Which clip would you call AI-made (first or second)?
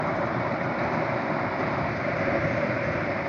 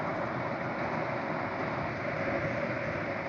first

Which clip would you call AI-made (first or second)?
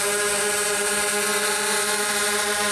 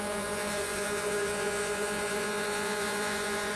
second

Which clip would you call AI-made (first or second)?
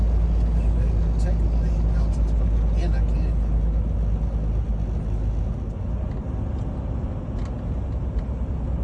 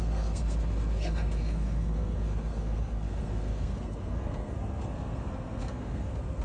second